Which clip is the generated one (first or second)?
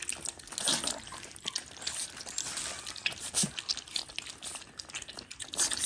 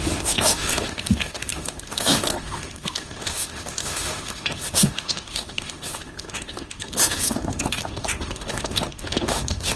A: second